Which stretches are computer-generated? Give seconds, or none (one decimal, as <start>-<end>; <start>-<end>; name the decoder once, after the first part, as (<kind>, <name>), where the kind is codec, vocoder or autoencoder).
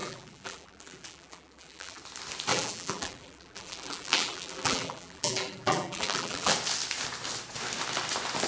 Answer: 0.0-2.0 (vocoder, BigVGAN v2); 2.5-6.5